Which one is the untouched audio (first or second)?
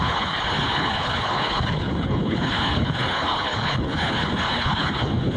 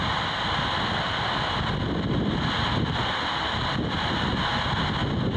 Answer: second